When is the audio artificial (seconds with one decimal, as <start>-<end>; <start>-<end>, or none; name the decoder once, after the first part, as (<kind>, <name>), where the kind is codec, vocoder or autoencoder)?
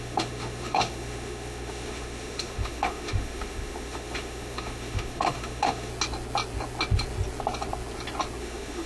0.0-5.9 (autoencoder, DAC-VAE); 8.4-8.9